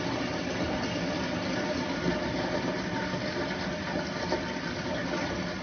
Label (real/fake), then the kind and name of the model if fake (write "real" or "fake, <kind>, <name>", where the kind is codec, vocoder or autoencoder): real